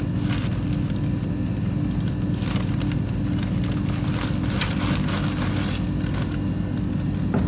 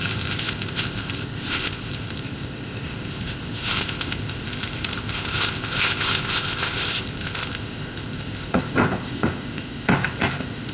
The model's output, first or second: second